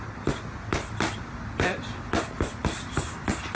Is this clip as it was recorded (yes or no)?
yes